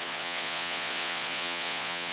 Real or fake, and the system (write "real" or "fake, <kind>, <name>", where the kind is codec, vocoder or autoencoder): fake, vocoder, Vocos